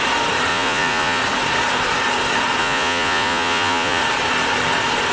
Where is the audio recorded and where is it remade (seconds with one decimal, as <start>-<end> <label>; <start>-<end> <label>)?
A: 0.0-0.5 recorded; 0.5-1.2 remade; 1.2-2.6 recorded; 2.6-4.0 remade; 4.0-5.1 recorded